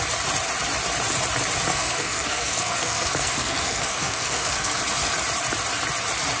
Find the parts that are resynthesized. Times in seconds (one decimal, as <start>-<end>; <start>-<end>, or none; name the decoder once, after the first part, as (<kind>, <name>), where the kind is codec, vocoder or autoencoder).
1.7-4.8 (codec, SNAC)

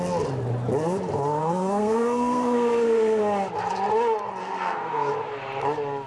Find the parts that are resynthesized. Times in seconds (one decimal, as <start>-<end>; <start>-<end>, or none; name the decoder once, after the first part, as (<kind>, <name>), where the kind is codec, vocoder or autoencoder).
1.4-3.2 (codec, SNAC); 4.4-5.1